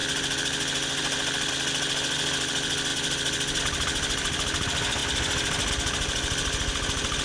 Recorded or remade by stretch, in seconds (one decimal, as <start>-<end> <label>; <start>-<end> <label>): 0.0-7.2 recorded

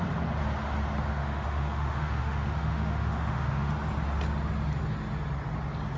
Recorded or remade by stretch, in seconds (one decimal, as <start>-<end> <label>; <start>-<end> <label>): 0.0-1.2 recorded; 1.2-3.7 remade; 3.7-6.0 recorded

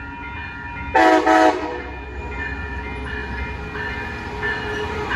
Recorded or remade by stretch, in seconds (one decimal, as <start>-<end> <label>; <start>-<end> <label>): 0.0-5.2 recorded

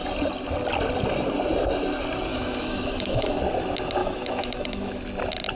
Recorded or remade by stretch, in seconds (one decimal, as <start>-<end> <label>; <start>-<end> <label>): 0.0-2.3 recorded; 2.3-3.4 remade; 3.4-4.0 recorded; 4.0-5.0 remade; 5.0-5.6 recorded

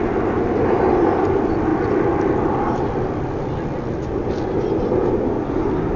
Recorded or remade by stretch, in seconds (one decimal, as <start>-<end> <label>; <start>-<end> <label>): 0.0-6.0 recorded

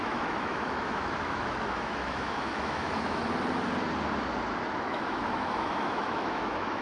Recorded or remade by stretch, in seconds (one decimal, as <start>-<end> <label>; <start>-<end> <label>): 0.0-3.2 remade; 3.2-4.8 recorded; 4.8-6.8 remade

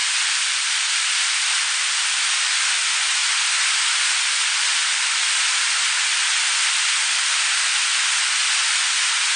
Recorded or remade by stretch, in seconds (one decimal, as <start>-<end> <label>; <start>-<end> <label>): 0.0-9.4 recorded

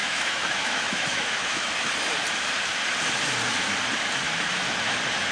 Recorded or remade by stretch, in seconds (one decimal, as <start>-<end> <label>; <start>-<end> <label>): 0.0-1.9 remade; 1.9-5.3 recorded